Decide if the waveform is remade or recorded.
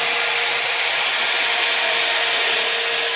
recorded